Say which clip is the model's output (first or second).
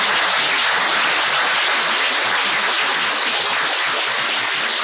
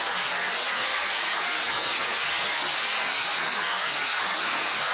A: second